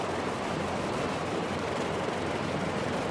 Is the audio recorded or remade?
recorded